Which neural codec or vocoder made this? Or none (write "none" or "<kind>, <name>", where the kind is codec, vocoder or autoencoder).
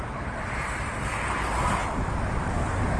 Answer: none